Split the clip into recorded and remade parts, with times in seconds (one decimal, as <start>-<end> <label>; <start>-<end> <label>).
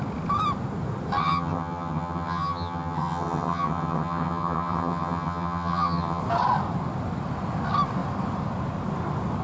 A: 0.0-1.2 recorded; 1.2-6.2 remade; 6.2-9.4 recorded